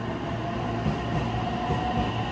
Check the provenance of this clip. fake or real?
real